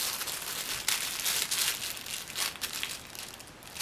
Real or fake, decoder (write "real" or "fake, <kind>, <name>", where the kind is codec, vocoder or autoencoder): real